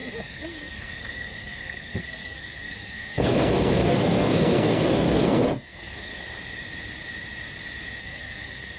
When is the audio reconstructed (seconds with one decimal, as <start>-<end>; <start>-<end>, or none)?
0.0-6.1; 8.0-8.8